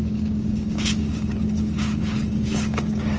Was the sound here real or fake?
fake